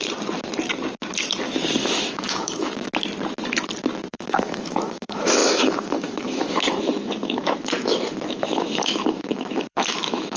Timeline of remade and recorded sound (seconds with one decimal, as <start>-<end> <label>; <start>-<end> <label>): 0.0-1.8 recorded; 1.8-2.9 remade; 2.9-4.1 recorded; 4.1-10.4 remade